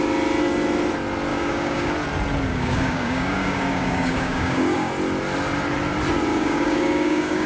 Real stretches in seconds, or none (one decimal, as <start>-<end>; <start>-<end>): 0.0-1.3; 1.9-2.5; 4.9-6.3